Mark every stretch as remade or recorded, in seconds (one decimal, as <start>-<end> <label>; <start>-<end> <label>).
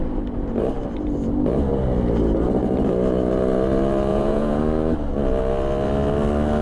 0.0-4.1 recorded; 4.1-4.6 remade; 4.6-6.6 recorded